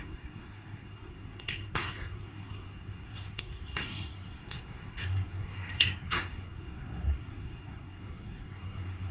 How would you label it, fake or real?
fake